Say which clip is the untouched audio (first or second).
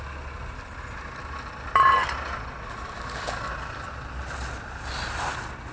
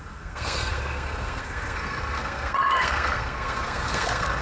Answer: first